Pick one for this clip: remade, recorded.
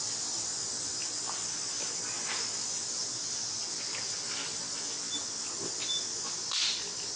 recorded